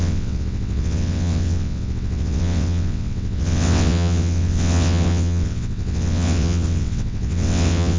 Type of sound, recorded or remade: remade